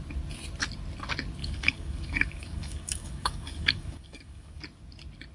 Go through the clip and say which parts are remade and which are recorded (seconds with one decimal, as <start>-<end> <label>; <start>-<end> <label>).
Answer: 0.0-1.4 recorded; 1.4-4.6 remade; 4.6-5.3 recorded